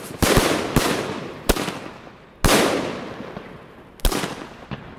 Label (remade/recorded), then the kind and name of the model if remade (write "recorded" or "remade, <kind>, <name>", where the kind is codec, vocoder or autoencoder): recorded